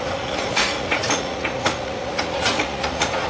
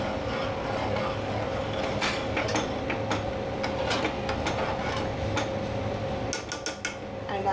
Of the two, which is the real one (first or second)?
second